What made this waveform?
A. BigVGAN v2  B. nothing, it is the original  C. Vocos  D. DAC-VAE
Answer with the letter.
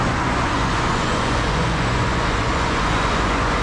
C